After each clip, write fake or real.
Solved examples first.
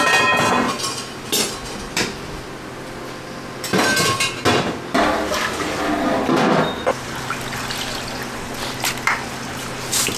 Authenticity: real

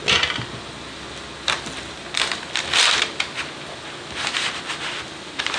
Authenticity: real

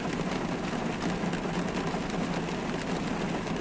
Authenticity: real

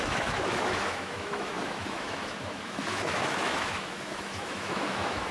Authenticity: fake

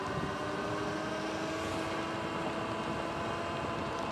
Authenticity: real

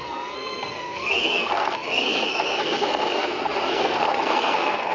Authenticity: fake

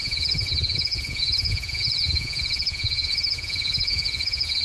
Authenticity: fake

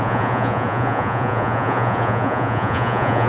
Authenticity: fake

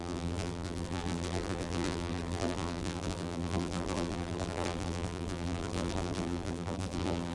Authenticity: fake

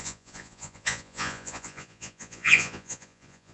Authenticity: fake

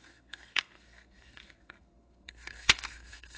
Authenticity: fake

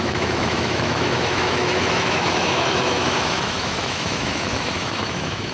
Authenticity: fake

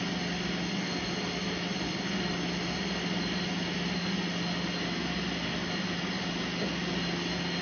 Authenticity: real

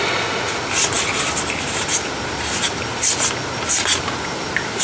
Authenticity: real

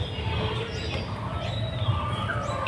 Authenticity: real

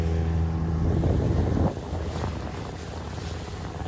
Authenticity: real